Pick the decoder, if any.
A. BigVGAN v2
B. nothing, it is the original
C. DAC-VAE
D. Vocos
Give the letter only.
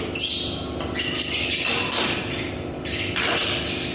B